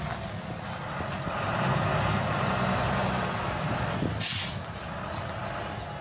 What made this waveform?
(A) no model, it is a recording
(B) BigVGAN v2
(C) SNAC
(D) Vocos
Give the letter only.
A